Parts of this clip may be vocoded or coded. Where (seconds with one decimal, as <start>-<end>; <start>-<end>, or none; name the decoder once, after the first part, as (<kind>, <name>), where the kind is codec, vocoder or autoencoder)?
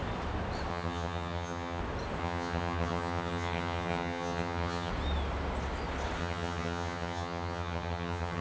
0.7-1.8 (vocoder, HiFi-GAN); 2.2-4.9; 6.2-8.4